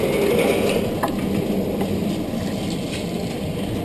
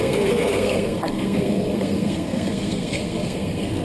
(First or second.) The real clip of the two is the first